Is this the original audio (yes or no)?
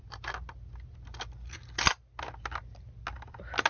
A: yes